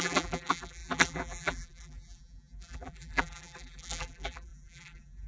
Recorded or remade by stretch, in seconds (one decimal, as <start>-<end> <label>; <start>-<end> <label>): 0.0-5.3 remade